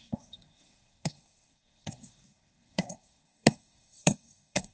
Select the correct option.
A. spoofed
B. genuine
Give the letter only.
A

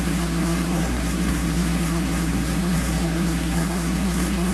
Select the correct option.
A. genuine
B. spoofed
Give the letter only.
B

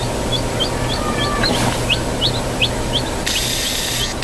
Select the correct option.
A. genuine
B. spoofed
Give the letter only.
A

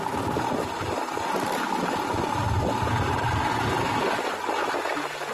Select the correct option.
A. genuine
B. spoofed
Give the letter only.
A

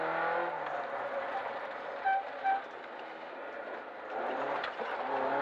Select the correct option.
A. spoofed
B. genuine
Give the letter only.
B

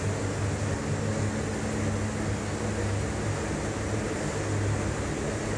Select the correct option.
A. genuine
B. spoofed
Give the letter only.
A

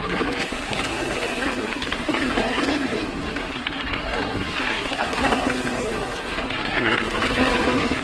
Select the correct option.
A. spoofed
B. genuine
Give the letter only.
A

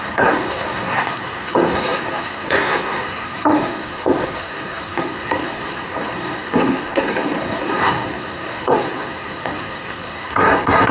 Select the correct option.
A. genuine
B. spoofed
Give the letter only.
B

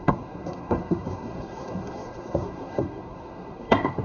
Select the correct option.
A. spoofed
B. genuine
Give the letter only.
A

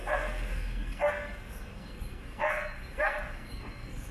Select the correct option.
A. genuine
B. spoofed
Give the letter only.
B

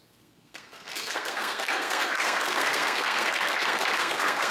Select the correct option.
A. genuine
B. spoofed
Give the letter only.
B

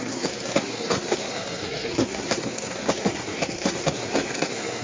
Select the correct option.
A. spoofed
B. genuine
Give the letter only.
A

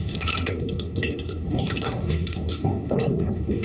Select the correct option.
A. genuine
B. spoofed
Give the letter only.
B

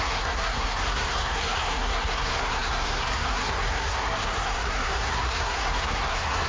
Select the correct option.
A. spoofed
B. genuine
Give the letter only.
A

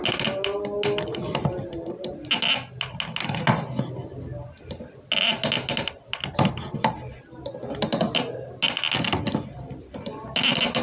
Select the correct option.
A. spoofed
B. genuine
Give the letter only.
B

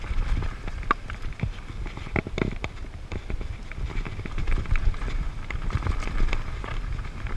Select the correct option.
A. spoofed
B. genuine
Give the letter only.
B